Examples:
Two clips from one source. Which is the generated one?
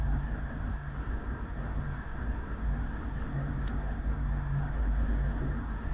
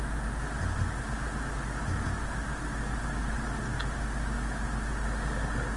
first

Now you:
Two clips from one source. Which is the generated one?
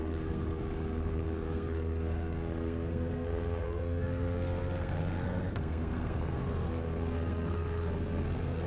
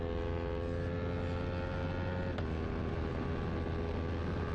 first